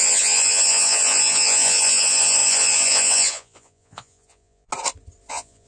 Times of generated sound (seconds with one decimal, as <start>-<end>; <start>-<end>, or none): 0.0-4.7; 5.3-5.7